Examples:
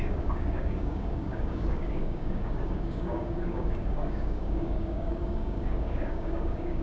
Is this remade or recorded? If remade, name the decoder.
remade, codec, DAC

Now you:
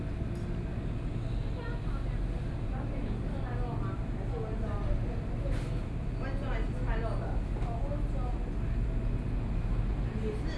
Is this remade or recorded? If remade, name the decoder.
recorded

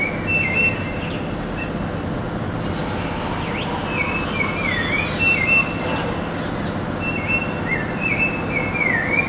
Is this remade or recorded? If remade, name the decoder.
recorded